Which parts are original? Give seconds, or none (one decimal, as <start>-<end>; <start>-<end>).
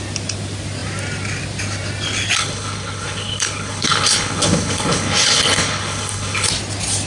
0.0-2.4; 6.5-7.1